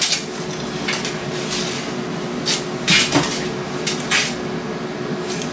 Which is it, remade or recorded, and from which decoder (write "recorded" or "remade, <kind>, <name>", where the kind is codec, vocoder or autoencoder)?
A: recorded